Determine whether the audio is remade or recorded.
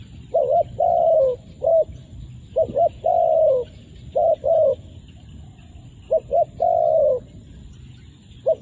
recorded